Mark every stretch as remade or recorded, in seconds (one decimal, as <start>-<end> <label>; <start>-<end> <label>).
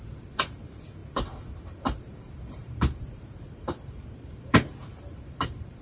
0.0-5.8 remade